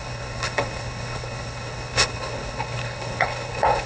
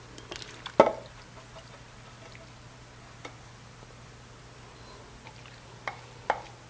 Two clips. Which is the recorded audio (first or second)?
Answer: second